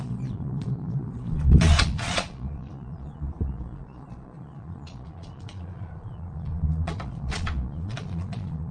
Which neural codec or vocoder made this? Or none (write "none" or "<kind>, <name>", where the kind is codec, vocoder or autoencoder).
vocoder, Vocos